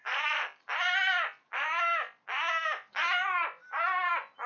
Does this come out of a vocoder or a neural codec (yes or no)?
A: no